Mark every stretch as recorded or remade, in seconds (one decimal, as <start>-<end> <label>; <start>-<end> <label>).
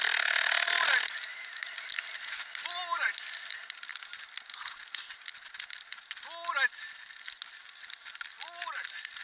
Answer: 0.0-9.2 recorded